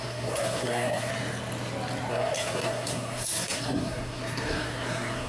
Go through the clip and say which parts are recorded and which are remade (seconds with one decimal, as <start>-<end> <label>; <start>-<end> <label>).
0.0-1.1 remade; 1.1-2.1 recorded; 2.1-5.3 remade